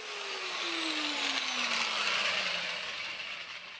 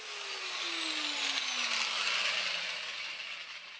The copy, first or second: first